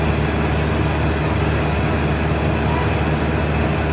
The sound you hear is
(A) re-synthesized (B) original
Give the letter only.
B